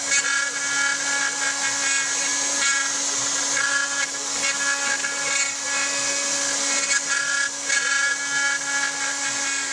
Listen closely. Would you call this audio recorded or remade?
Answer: recorded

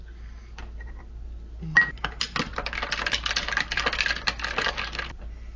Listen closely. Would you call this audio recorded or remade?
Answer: recorded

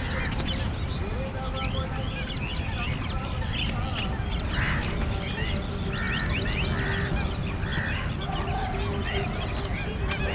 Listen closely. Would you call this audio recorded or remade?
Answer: recorded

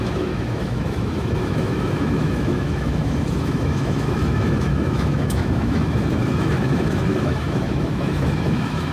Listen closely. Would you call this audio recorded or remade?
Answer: remade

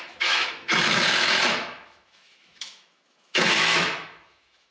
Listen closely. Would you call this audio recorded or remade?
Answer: remade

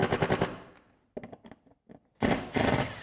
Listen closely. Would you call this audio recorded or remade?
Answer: recorded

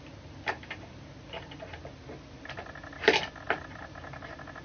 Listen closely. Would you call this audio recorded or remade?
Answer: recorded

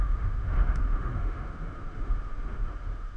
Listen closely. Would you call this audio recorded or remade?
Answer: remade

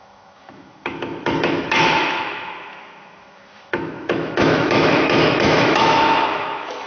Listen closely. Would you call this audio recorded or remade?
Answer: remade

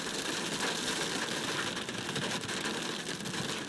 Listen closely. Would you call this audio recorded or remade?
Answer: recorded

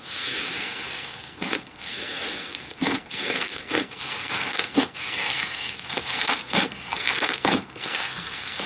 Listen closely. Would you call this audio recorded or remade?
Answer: remade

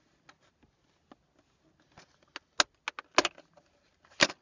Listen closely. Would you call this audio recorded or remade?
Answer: recorded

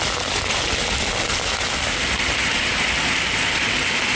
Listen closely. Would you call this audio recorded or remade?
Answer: recorded